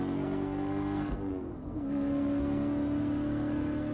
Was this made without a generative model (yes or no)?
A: no